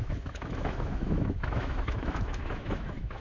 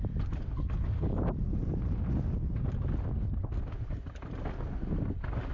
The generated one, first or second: first